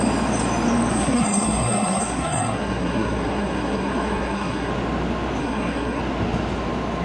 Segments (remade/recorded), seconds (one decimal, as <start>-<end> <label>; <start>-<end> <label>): 0.0-0.9 recorded; 0.9-4.7 remade; 4.7-5.4 recorded; 5.4-6.0 remade; 6.0-7.0 recorded